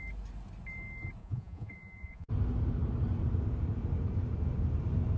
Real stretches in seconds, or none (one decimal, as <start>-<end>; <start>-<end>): 0.0-1.2; 2.3-5.2